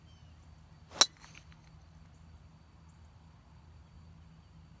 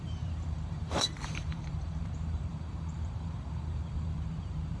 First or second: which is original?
first